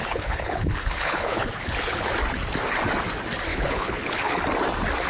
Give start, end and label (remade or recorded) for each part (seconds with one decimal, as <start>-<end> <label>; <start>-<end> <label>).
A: 0.0-2.1 remade; 2.1-3.5 recorded; 3.5-4.4 remade; 4.4-5.1 recorded